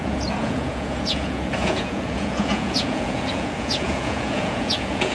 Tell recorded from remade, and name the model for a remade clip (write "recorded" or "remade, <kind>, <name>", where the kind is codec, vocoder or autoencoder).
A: remade, vocoder, Vocos